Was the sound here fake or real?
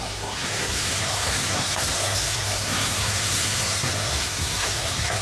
fake